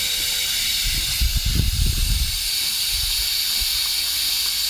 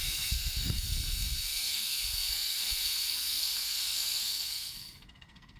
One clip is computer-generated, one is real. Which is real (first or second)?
first